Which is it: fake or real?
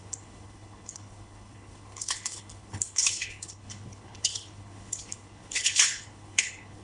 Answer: fake